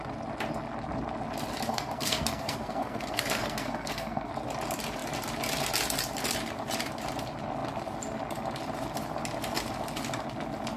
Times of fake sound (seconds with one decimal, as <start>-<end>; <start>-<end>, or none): 1.7-4.3